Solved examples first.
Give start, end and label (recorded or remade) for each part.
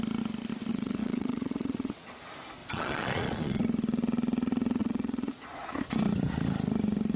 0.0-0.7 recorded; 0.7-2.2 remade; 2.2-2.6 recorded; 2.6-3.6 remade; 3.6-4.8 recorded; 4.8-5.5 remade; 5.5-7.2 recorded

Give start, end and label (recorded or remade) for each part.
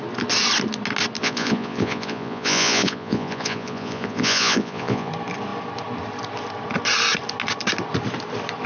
0.0-1.2 recorded; 1.2-5.1 remade; 5.1-8.7 recorded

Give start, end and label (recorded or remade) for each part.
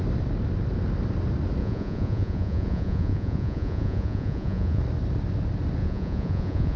0.0-1.6 recorded; 1.6-4.8 remade; 4.8-5.8 recorded; 5.8-6.8 remade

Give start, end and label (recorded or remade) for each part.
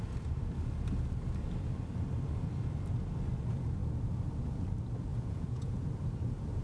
0.0-5.1 recorded; 5.1-5.7 remade; 5.7-6.6 recorded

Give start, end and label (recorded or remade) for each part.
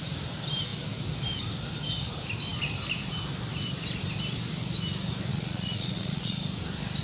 0.0-5.3 recorded; 5.3-6.4 remade; 6.4-7.0 recorded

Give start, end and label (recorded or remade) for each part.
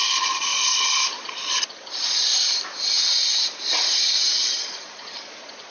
0.0-2.3 remade; 2.3-4.6 recorded; 4.6-5.7 remade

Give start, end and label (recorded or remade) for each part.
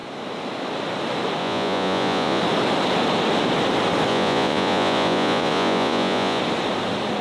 0.0-1.4 recorded; 1.4-2.4 remade; 2.4-4.1 recorded; 4.1-6.4 remade; 6.4-7.2 recorded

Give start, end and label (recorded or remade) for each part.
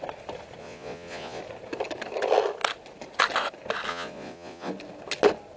0.0-0.6 recorded; 0.6-1.4 remade; 1.4-3.9 recorded; 3.9-4.7 remade; 4.7-5.6 recorded